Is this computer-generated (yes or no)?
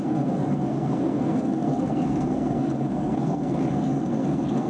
yes